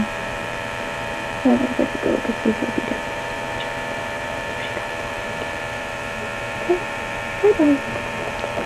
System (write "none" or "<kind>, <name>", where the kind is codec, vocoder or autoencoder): vocoder, BigVGAN v2